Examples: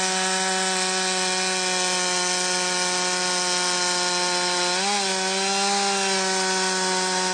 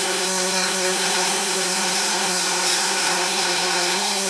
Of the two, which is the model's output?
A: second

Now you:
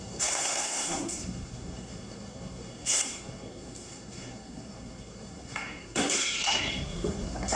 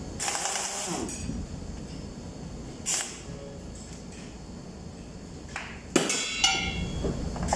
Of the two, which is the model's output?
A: first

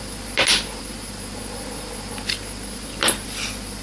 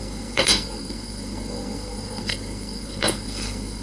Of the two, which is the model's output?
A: second